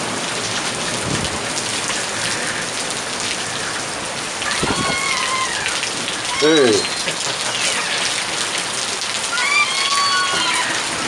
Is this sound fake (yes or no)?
no